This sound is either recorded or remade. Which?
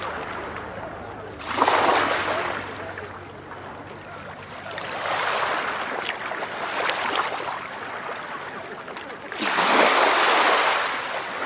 recorded